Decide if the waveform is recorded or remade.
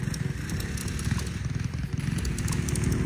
recorded